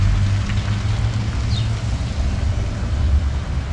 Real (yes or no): yes